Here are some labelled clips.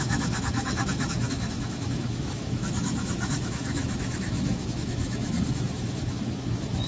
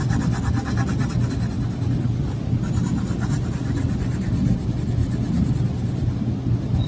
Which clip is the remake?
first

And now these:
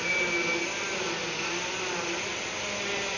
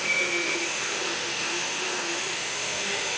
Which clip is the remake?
second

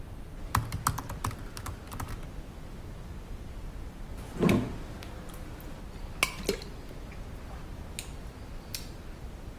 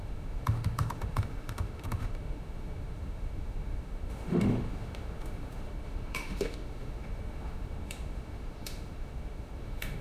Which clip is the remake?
second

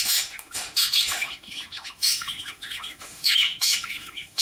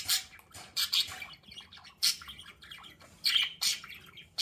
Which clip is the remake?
first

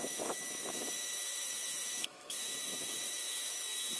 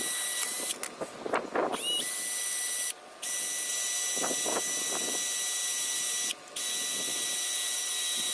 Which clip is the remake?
first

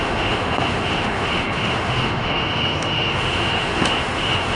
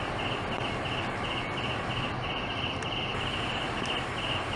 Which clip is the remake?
first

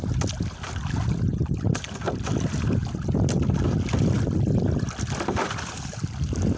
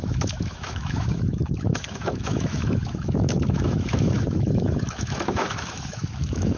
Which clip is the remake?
second